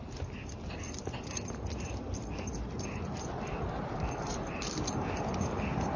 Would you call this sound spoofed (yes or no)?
no